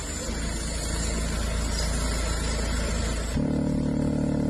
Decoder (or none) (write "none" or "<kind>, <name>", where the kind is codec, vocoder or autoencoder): none